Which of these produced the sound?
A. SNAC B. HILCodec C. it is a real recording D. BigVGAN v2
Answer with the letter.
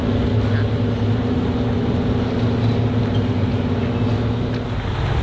C